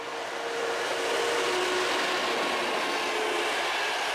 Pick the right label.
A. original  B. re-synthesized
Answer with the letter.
A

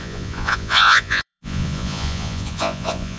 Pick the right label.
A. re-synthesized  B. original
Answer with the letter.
A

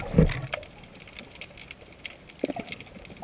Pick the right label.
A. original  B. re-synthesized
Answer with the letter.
A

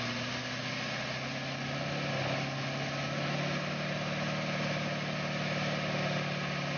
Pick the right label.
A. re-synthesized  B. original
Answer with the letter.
B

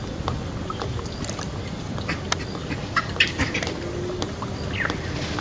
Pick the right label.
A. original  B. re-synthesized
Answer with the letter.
A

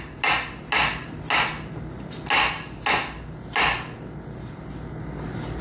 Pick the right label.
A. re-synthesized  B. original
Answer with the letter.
B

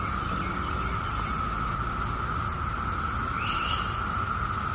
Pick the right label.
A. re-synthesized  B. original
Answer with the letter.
B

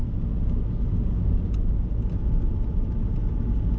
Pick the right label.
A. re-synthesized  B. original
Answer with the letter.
B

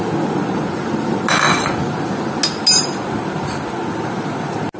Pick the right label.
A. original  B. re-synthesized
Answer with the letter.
A